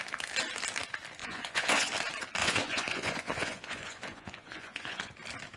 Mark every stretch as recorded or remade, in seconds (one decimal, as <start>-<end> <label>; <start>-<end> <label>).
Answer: 0.0-1.2 recorded; 1.2-1.9 remade; 1.9-2.4 recorded; 2.4-5.1 remade; 5.1-5.6 recorded